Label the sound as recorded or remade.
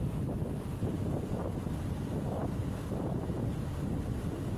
recorded